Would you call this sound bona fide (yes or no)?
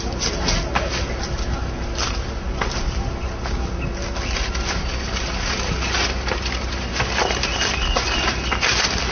yes